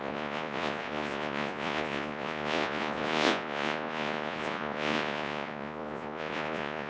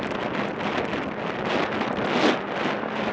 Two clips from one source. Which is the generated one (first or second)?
first